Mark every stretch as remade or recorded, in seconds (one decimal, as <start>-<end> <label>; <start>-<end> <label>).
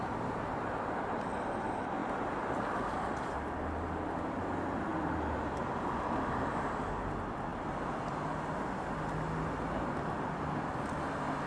0.0-2.0 recorded; 2.0-3.2 remade; 3.2-4.9 recorded; 4.9-6.8 remade; 6.8-11.5 recorded